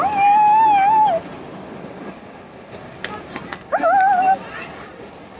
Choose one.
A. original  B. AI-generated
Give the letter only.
A